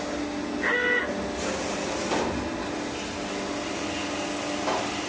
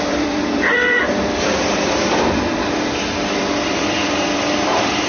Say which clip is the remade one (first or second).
second